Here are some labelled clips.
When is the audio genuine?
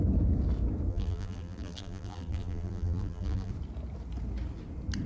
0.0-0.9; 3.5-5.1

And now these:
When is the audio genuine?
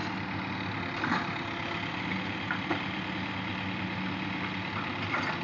0.0-5.4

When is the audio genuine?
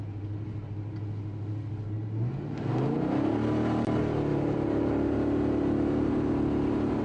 0.0-4.3; 6.3-7.0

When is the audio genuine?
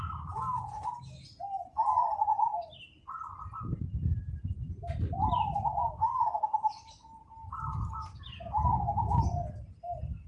0.0-3.7; 5.2-10.3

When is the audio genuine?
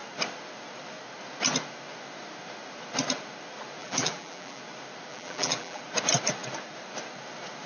0.0-3.8; 4.6-5.1; 5.8-7.7